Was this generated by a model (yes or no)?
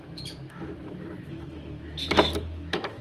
yes